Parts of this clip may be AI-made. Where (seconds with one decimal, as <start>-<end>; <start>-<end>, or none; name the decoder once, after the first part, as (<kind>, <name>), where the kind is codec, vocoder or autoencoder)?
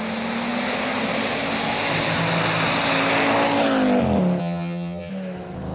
4.4-5.1 (vocoder, HiFi-GAN)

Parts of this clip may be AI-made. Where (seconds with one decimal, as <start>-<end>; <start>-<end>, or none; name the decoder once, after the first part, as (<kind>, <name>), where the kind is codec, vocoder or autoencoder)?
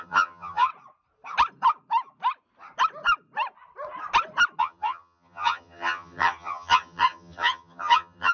0.0-0.7 (vocoder, HiFi-GAN); 4.6-8.3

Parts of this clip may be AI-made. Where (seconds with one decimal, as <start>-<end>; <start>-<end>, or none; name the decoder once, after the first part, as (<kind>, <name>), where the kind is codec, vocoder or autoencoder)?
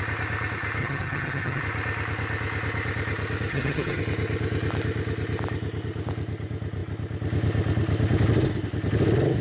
0.8-1.6 (vocoder, HiFi-GAN); 3.5-4.0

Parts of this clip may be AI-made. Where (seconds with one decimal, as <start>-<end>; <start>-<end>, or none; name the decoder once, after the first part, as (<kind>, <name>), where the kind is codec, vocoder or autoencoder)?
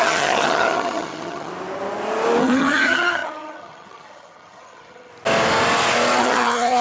0.0-1.5 (vocoder, HiFi-GAN); 2.4-5.1; 6.2-6.8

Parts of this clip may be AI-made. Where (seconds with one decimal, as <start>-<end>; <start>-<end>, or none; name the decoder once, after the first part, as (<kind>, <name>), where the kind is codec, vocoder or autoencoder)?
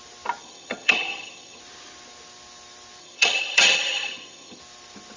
0.4-1.6 (vocoder, HiFi-GAN); 3.0-4.6